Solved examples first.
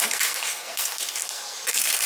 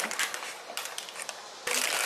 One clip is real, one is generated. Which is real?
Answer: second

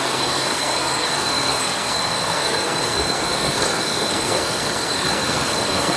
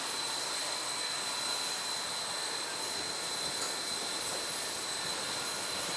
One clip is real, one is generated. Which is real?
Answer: second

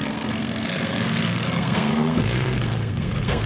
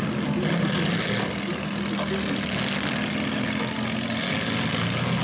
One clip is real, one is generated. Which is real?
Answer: second